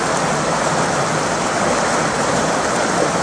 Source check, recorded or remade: recorded